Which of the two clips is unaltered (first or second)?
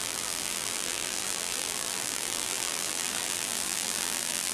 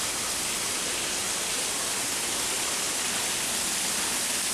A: second